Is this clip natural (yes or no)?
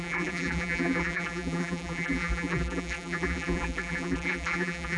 no